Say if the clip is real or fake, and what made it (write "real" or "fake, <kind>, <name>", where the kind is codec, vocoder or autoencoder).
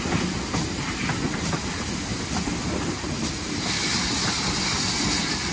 real